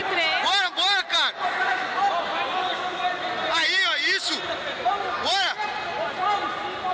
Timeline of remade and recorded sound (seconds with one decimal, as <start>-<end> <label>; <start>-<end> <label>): 0.0-6.9 recorded